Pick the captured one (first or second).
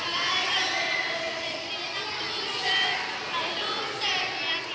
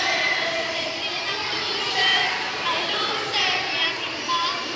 first